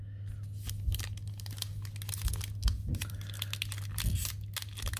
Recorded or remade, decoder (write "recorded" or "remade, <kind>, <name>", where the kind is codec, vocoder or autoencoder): recorded